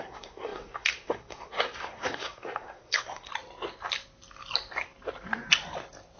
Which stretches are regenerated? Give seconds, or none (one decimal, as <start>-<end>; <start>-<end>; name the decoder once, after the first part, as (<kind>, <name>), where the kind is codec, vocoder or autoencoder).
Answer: 0.0-3.3 (codec, SNAC)